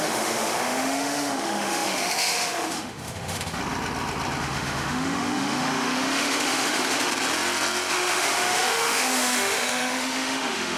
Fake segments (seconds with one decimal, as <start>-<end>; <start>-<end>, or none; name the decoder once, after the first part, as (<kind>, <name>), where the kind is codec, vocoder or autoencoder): 0.0-3.6 (autoencoder, DAC-VAE); 4.4-7.1; 7.9-10.8